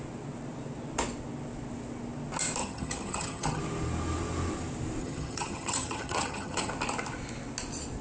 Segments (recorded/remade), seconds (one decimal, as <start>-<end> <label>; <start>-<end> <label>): 0.0-2.6 recorded; 2.6-3.6 remade; 3.6-5.0 recorded; 5.0-6.7 remade; 6.7-8.0 recorded